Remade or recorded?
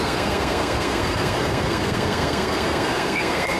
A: remade